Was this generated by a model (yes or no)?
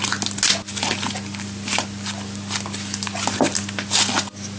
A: no